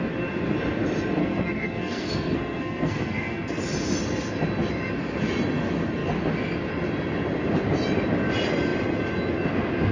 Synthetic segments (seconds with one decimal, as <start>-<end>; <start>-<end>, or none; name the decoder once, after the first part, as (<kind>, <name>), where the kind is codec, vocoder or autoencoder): 1.2-3.6 (codec, SNAC)